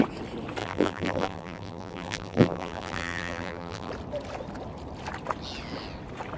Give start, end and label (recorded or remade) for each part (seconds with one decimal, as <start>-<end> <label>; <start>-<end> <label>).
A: 0.0-0.6 recorded; 0.6-3.9 remade; 3.9-6.4 recorded